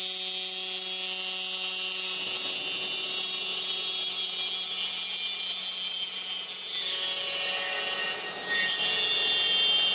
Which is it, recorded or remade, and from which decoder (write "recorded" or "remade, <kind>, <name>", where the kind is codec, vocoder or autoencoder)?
recorded